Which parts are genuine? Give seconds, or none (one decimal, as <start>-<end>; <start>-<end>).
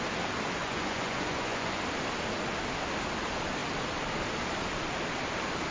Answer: 0.0-0.6; 1.8-5.7